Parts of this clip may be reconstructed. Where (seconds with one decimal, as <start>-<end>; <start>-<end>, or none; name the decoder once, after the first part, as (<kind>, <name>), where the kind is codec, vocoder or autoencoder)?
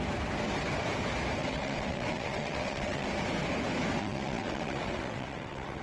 1.4-3.1 (vocoder, WaveNeXt); 4.0-5.8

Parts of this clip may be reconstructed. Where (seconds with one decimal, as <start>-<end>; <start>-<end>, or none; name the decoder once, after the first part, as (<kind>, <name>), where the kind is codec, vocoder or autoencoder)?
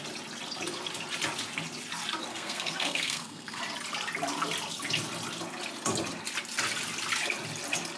2.3-3.6 (codec, SNAC)